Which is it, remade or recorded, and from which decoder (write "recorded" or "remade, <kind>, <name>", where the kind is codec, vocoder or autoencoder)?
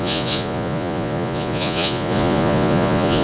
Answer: remade, vocoder, Vocos